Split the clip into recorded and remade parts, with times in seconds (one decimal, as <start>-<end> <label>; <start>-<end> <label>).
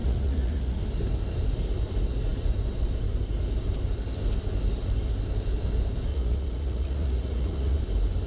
0.0-0.8 remade; 0.8-6.1 recorded; 6.1-7.8 remade; 7.8-8.3 recorded